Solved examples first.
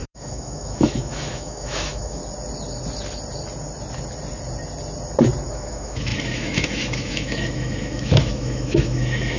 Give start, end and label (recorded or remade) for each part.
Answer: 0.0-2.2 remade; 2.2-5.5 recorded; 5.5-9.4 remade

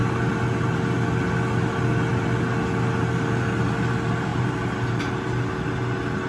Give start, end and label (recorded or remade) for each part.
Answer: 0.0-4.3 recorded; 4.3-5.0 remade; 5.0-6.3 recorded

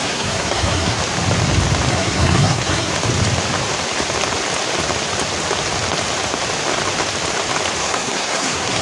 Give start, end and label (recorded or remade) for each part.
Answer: 0.0-1.0 remade; 1.0-1.9 recorded; 1.9-2.9 remade; 2.9-7.8 recorded; 7.8-8.8 remade